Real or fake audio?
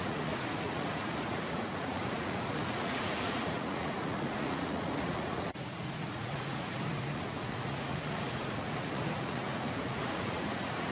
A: fake